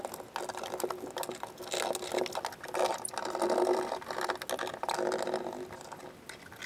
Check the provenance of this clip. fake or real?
real